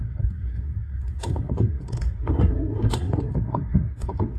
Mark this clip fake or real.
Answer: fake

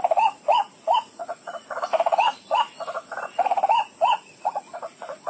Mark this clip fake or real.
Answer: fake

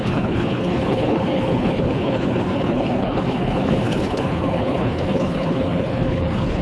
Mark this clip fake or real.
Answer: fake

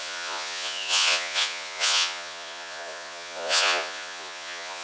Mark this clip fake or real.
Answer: fake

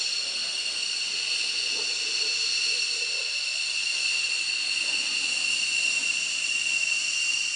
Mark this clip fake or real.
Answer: real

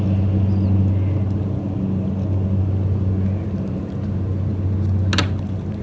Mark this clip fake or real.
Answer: real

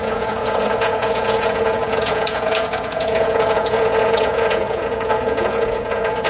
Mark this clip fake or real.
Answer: fake